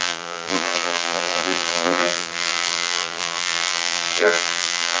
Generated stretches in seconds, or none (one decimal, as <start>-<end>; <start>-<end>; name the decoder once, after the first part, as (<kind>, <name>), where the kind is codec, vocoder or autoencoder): 0.0-5.0 (vocoder, BigVGAN v2)